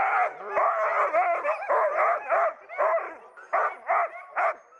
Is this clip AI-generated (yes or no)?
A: no